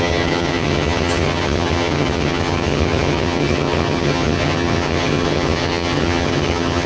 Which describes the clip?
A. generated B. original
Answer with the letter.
A